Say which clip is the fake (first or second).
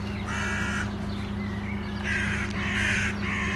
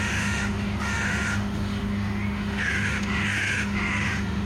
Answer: second